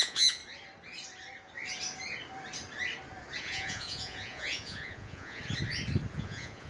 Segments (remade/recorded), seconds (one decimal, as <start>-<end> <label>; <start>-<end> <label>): 0.0-0.4 remade; 0.4-3.4 recorded; 3.4-5.4 remade; 5.4-6.1 recorded; 6.1-6.7 remade